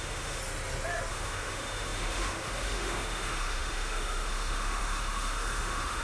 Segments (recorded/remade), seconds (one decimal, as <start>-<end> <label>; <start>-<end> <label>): 0.0-0.4 remade; 0.4-1.1 recorded; 1.1-6.0 remade